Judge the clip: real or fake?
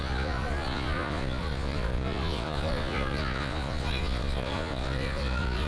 fake